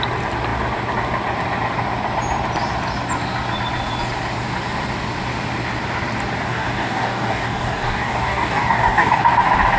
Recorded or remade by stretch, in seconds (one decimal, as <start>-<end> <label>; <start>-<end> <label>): 0.0-6.5 recorded; 6.5-9.2 remade; 9.2-9.8 recorded